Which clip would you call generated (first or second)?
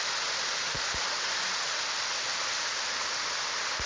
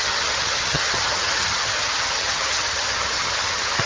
second